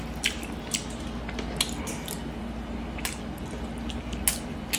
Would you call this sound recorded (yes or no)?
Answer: yes